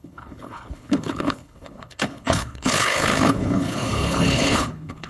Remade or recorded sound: remade